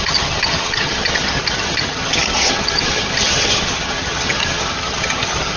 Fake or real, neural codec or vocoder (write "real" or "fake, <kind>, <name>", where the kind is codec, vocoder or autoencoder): fake, vocoder, HiFi-GAN